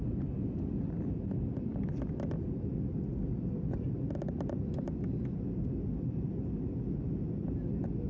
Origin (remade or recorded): recorded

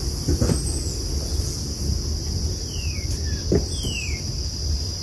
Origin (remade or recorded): recorded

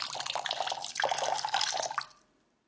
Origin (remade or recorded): recorded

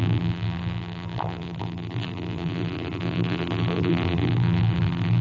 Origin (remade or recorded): remade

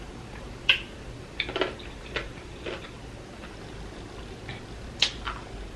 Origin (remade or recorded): remade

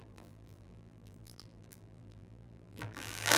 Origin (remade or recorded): remade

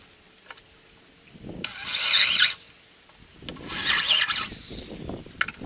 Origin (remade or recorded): recorded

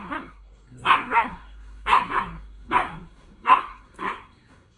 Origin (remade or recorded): remade